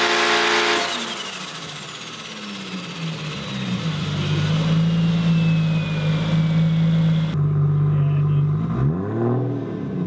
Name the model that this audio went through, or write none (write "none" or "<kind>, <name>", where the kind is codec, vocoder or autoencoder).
none